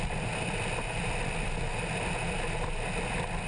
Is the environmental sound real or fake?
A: real